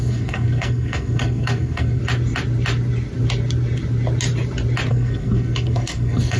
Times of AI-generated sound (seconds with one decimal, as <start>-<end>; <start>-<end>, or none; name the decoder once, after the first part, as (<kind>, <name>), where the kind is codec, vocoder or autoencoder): 0.0-2.0 (codec, SNAC); 4.9-6.4